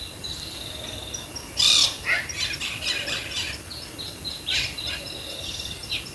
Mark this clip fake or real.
real